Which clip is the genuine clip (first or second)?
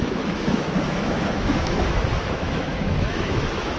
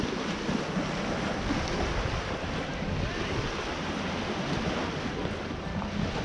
second